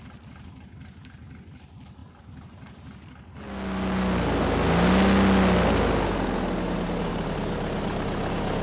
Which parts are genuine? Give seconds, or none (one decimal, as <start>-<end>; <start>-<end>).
0.0-8.6